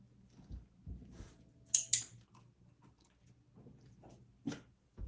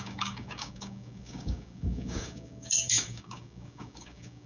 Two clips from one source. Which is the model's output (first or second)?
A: second